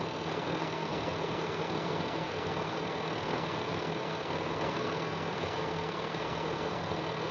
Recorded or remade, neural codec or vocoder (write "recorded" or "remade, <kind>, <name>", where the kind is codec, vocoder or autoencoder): remade, codec, SNAC